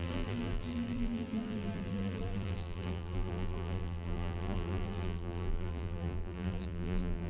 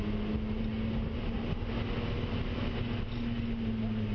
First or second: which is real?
second